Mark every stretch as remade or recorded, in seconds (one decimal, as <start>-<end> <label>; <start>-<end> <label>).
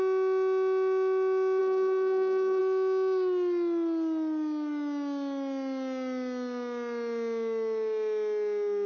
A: 0.0-1.6 recorded; 1.6-2.6 remade; 2.6-8.9 recorded